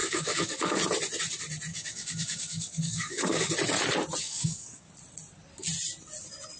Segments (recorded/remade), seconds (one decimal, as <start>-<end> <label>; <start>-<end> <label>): 0.0-0.8 remade; 0.8-1.7 recorded; 1.7-3.5 remade; 3.5-4.2 recorded; 4.2-4.9 remade; 4.9-6.6 recorded